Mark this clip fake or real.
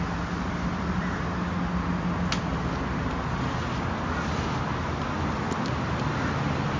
real